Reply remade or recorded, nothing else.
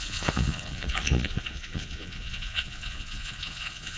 remade